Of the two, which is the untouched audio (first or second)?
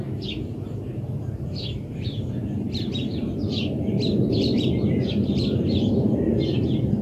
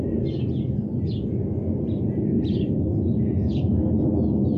second